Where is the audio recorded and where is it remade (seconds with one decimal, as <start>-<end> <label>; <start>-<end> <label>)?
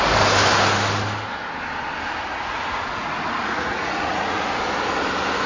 0.0-2.3 recorded; 2.3-4.5 remade; 4.5-5.5 recorded